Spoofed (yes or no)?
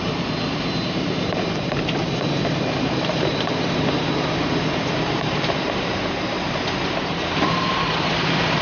yes